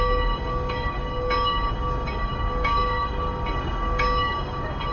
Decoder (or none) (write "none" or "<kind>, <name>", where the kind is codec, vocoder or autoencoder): codec, DAC